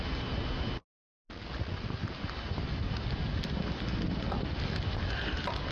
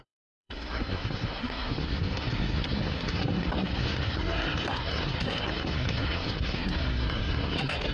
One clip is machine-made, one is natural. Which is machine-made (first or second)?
second